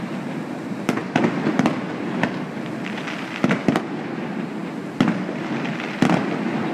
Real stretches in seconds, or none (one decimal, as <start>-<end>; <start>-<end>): 0.0-6.7